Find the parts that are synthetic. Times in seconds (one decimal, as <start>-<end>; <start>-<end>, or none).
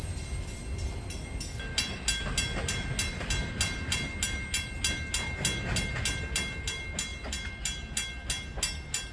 none